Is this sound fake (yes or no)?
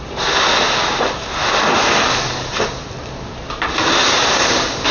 no